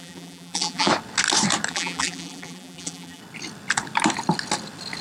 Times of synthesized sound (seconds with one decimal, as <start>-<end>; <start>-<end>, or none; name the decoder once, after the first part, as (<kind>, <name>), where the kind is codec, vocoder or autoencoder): 0.0-0.9 (vocoder, BigVGAN v2); 1.7-3.2